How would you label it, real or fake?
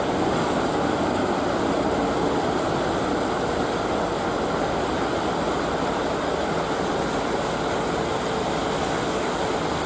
real